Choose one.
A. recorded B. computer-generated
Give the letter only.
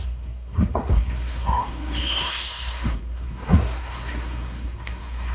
B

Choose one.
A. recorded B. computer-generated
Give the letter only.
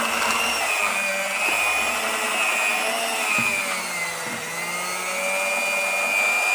A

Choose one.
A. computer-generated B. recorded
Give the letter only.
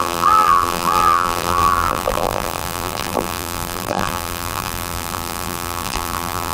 A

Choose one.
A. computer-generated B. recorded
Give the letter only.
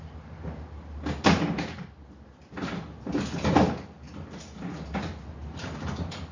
B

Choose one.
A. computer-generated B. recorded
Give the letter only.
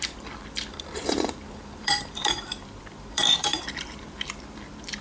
A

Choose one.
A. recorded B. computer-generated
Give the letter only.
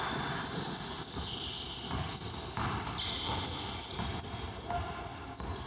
A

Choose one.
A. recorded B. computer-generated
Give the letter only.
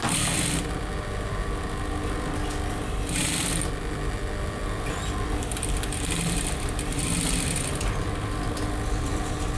A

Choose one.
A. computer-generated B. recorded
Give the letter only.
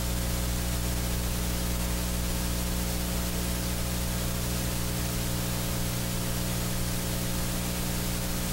B